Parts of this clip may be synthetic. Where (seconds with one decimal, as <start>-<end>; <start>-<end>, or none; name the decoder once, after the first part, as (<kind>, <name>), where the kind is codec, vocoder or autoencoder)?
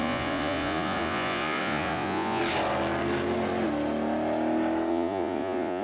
0.0-2.4 (vocoder, Vocos); 4.9-5.8